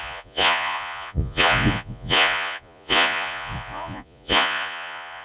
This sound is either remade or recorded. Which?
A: remade